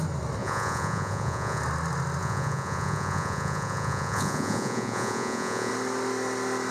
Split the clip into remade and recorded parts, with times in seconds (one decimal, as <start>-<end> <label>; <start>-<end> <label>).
0.0-0.4 recorded; 0.4-1.6 remade; 1.6-2.2 recorded; 2.2-5.7 remade; 5.7-6.7 recorded